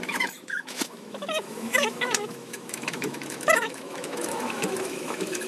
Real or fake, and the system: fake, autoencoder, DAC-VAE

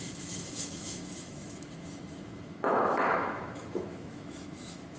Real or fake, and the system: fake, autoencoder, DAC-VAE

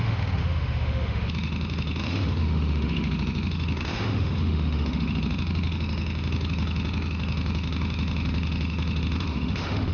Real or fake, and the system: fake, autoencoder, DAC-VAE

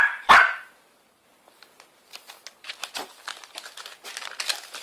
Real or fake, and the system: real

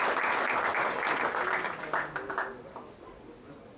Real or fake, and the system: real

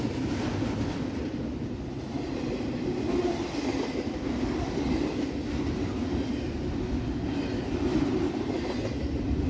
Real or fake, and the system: real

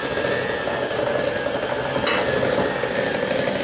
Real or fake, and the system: real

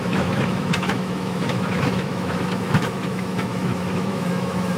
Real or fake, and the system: fake, autoencoder, DAC-VAE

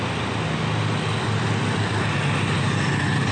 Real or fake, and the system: real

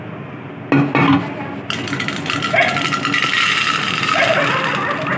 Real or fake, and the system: real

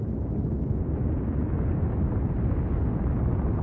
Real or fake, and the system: real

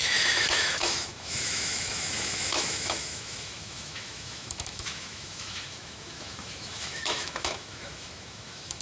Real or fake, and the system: fake, autoencoder, DAC-VAE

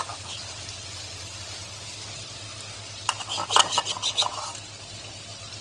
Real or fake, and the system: real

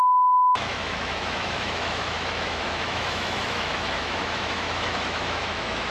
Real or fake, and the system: fake, autoencoder, DAC-VAE